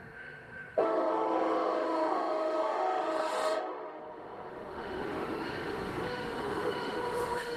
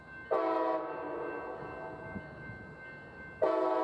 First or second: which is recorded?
second